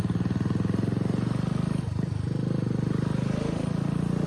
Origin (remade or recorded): recorded